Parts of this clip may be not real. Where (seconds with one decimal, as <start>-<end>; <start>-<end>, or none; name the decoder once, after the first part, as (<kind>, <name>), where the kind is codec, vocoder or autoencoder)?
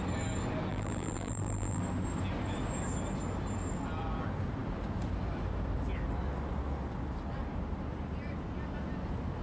0.7-1.8 (vocoder, BigVGAN v2)